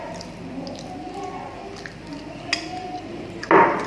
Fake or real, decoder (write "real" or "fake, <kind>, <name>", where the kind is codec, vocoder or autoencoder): real